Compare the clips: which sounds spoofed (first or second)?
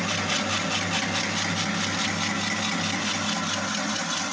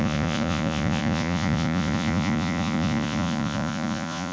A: second